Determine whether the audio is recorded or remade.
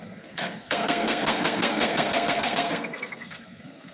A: remade